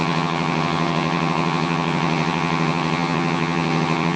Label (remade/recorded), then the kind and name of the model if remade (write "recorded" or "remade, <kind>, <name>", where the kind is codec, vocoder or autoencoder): remade, vocoder, HiFi-GAN